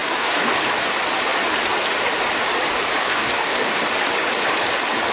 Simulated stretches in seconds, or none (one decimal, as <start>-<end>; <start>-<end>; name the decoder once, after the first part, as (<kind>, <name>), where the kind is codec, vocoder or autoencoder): 0.0-0.5 (codec, DAC); 3.0-3.8